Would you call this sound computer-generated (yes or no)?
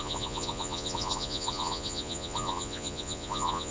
yes